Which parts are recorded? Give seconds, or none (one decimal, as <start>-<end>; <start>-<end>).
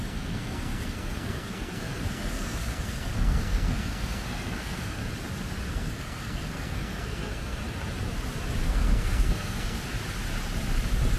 5.0-5.7; 7.6-8.6; 9.8-11.2